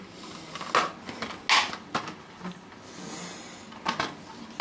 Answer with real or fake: real